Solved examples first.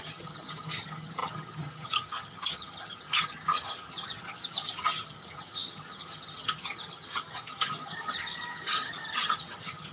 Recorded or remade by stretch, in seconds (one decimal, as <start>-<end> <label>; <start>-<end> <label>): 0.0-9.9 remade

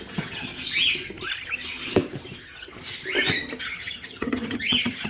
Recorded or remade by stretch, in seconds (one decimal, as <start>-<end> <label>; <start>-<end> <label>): 0.0-0.5 remade; 0.5-3.6 recorded; 3.6-5.1 remade

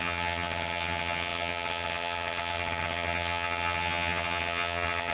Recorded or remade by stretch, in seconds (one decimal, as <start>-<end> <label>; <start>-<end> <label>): 0.0-5.1 remade

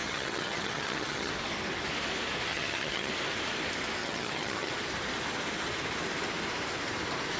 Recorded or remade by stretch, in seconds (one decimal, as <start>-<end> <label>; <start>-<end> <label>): 0.0-1.3 remade; 1.3-2.5 recorded; 2.5-3.1 remade; 3.1-4.0 recorded; 4.0-4.7 remade; 4.7-7.4 recorded

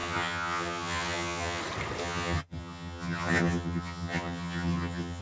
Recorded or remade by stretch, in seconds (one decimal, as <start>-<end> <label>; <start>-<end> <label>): 0.0-1.6 remade; 1.6-2.0 recorded; 2.0-5.2 remade

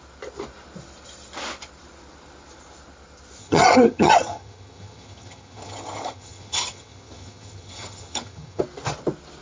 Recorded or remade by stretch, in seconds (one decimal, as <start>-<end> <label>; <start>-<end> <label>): 0.0-3.4 recorded; 3.4-8.6 remade; 8.6-9.4 recorded

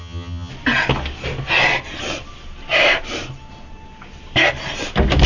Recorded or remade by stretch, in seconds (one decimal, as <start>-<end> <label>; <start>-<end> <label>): 0.0-0.5 remade; 0.5-5.3 recorded